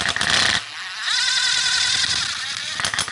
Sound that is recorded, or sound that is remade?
recorded